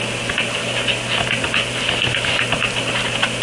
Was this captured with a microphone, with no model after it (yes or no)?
yes